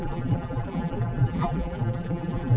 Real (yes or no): no